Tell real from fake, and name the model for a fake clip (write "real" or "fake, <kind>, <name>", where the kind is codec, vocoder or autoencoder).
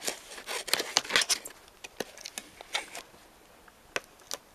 real